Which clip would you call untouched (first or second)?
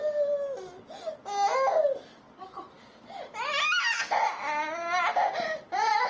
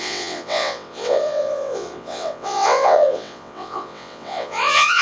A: first